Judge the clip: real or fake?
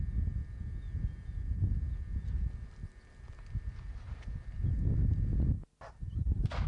real